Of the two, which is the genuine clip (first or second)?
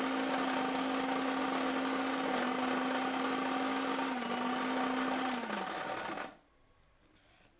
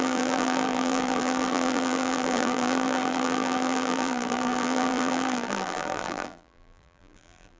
first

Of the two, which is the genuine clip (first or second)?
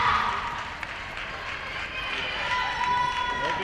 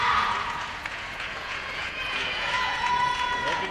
first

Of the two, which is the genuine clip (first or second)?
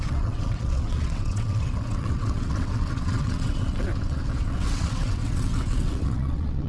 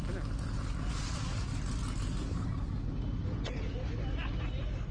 second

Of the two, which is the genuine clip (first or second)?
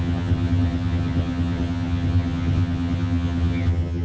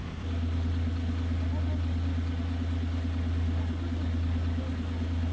second